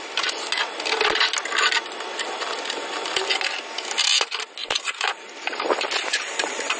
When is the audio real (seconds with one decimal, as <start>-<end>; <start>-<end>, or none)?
0.0-4.6; 5.2-6.0